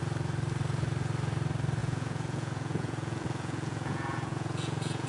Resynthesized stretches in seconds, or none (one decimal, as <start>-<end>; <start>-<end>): 1.8-5.1